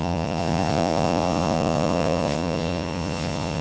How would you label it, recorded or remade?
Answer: remade